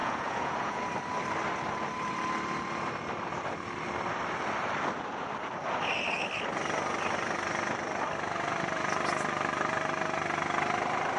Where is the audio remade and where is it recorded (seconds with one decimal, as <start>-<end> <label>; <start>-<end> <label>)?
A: 0.0-0.9 remade; 0.9-11.2 recorded

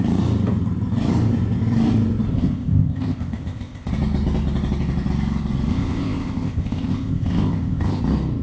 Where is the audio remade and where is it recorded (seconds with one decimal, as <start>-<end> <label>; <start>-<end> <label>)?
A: 0.0-2.3 recorded; 2.3-3.9 remade; 3.9-5.7 recorded; 5.7-8.0 remade; 8.0-8.4 recorded